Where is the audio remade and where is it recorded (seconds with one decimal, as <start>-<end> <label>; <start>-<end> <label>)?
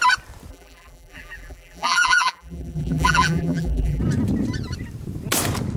0.0-0.5 recorded; 0.5-4.0 remade; 4.0-5.8 recorded